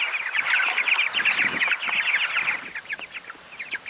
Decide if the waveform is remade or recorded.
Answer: recorded